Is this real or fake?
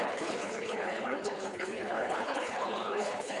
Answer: fake